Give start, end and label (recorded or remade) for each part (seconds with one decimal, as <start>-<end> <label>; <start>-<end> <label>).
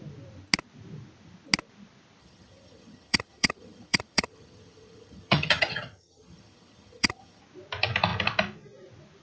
0.0-2.2 recorded; 2.2-7.4 remade; 7.4-9.2 recorded